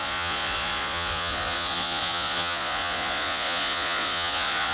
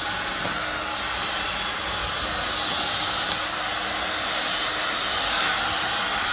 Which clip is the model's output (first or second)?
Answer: first